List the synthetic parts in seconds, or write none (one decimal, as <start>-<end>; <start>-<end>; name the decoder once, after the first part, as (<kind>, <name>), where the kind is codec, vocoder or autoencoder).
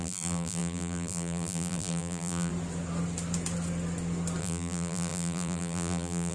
0.0-2.5 (vocoder, BigVGAN v2); 4.4-6.3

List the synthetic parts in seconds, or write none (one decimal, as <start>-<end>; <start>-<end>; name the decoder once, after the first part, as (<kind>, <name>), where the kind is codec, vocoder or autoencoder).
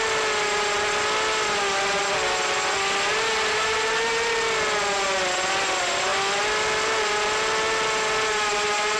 none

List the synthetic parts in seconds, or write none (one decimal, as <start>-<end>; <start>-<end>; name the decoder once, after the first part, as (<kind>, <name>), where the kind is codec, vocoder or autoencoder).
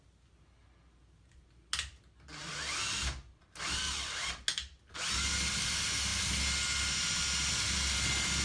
none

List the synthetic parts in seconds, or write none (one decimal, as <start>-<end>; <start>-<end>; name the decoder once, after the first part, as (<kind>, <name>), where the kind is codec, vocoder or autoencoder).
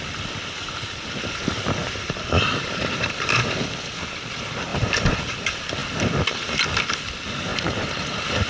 1.8-3.7 (vocoder, BigVGAN v2); 4.7-5.2; 7.5-8.5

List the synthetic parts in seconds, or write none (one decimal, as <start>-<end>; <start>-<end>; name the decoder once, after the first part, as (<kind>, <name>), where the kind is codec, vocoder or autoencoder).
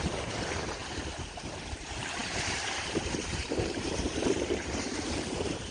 0.0-0.8 (vocoder, BigVGAN v2); 1.8-5.7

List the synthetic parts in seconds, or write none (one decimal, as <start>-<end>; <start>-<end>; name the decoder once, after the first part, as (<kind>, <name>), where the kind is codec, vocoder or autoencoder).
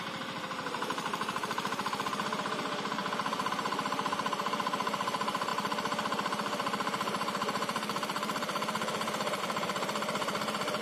0.0-3.0 (vocoder, BigVGAN v2); 3.5-10.8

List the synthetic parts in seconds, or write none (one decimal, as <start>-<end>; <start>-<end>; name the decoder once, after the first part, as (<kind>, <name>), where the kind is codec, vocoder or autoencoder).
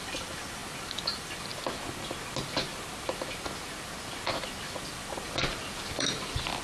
0.0-0.6 (vocoder, BigVGAN v2); 1.1-1.5; 4.8-6.6